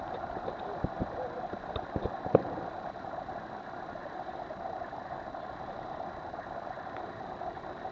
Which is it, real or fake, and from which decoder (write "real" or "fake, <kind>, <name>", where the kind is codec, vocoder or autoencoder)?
real